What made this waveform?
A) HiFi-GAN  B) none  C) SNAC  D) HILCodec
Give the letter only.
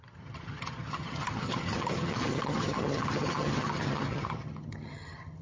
A